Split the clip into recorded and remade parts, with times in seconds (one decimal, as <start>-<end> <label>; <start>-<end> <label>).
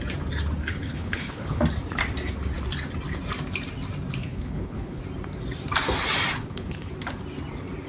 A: 0.0-0.7 recorded; 0.7-1.6 remade; 1.6-4.2 recorded; 4.2-5.0 remade; 5.0-6.4 recorded; 6.4-6.9 remade; 6.9-7.9 recorded